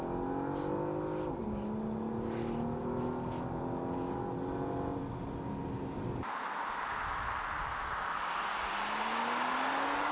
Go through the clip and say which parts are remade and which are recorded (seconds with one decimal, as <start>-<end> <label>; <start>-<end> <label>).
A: 0.0-10.1 recorded